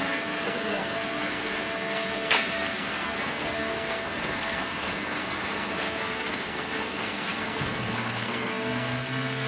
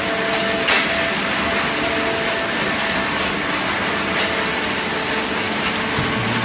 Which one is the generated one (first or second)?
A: first